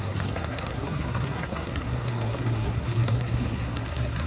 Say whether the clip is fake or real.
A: fake